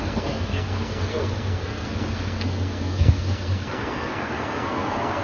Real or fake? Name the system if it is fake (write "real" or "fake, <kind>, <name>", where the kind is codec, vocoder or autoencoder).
fake, codec, SNAC